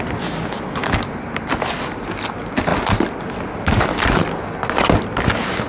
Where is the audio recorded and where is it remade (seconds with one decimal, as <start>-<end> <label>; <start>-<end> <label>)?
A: 0.0-5.7 recorded